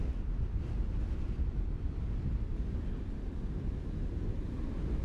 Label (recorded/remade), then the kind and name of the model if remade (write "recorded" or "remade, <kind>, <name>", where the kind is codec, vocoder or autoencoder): recorded